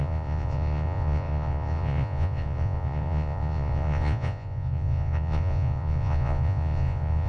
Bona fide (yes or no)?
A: no